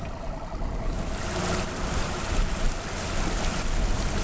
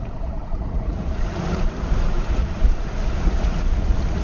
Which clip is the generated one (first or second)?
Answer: second